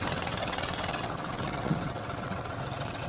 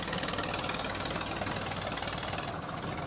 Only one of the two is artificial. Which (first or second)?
first